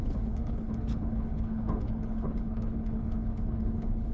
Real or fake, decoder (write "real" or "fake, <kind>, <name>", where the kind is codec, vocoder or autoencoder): fake, codec, HILCodec